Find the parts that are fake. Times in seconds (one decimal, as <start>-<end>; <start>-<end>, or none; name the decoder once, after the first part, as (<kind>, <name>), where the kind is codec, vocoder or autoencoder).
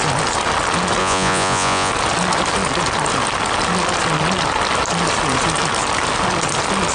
1.0-1.9 (vocoder, Vocos)